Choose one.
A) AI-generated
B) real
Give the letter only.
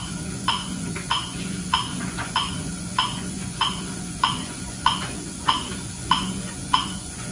A